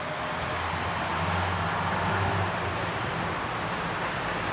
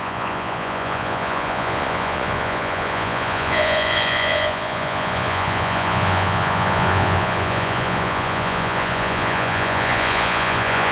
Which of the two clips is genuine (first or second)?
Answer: first